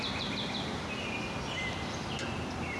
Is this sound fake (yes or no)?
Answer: no